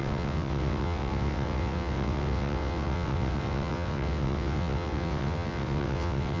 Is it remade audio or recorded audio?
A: remade